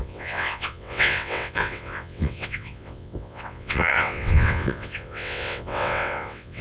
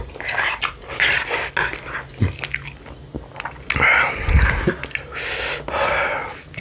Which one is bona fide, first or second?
second